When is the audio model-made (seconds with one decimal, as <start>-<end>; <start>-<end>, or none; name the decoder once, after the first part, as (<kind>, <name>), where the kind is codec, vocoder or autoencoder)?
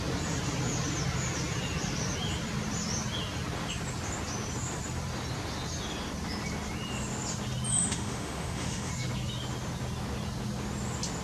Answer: 7.7-8.9 (autoencoder, DAC-VAE)